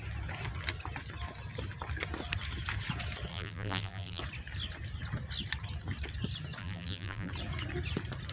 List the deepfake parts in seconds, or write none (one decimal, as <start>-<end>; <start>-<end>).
3.3-4.2; 6.6-7.3